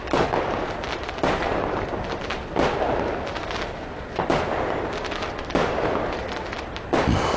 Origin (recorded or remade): recorded